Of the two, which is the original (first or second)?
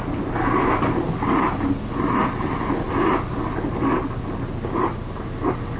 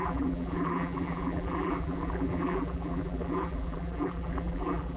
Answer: first